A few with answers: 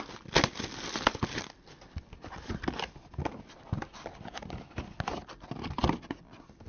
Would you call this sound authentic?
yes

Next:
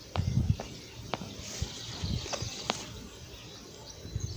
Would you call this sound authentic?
yes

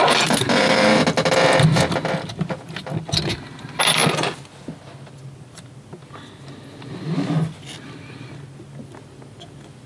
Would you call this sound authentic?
yes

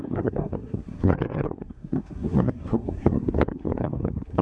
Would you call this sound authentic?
no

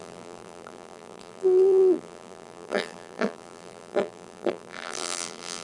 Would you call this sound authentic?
no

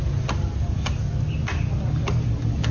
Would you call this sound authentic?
yes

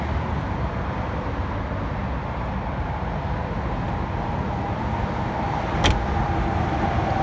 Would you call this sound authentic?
yes